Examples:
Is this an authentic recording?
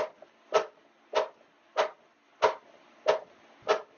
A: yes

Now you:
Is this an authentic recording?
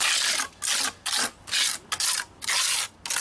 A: yes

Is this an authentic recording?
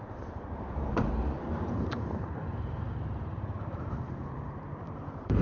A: no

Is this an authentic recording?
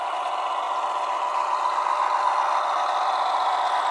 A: yes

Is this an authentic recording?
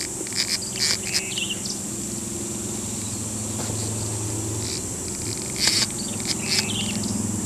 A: yes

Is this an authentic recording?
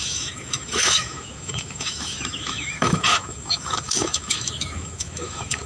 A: no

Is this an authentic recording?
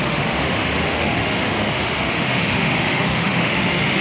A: no